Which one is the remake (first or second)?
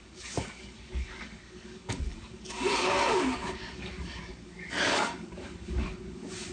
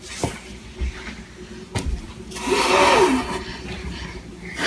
first